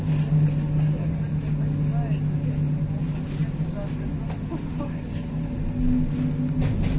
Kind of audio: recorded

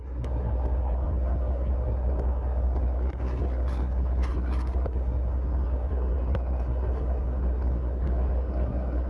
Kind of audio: remade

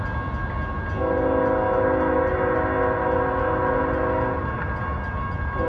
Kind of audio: recorded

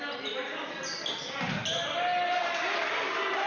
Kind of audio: recorded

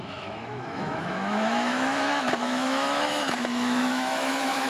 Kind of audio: remade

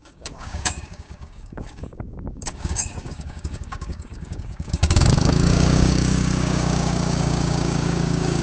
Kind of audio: remade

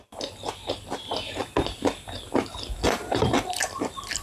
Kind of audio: remade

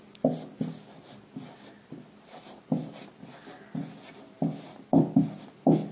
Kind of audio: recorded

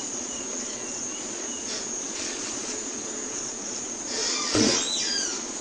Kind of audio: remade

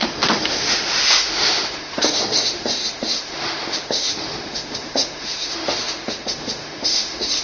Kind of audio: remade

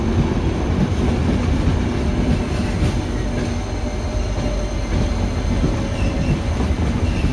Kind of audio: recorded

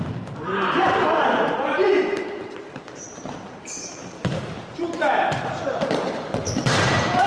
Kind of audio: remade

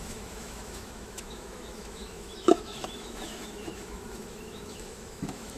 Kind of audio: remade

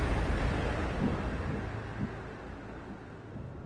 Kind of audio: recorded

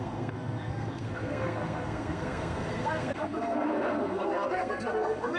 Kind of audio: remade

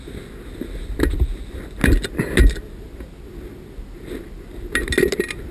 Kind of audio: recorded